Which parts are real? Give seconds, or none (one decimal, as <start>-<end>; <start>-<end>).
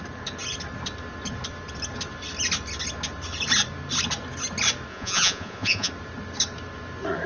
0.0-4.9; 5.9-7.3